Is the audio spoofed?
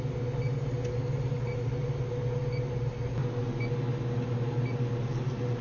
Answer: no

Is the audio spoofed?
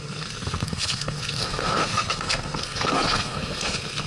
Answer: yes